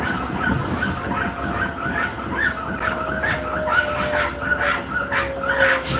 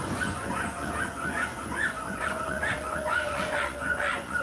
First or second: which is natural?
first